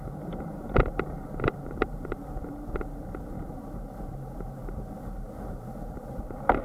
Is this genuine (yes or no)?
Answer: no